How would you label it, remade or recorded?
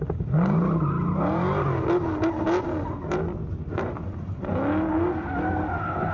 recorded